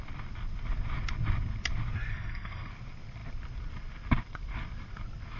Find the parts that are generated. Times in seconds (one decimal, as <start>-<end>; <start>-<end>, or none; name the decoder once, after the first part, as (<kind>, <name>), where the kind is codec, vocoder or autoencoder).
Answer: 2.1-2.7 (codec, SNAC)